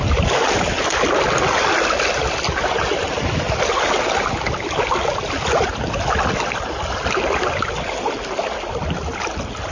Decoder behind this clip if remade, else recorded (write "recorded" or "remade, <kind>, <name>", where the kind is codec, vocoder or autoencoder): recorded